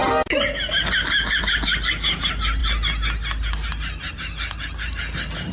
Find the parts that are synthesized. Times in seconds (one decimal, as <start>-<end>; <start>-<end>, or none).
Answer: none